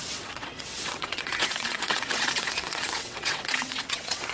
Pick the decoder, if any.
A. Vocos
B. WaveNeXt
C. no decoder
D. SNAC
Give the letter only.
B